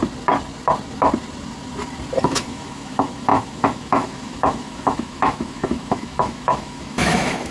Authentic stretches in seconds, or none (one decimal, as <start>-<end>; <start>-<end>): 0.0-2.2